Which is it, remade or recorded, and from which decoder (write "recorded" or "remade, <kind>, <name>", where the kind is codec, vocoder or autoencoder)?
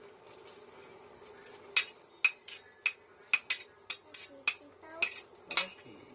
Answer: recorded